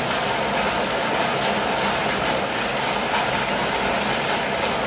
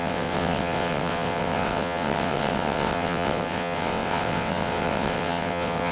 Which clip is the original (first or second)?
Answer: first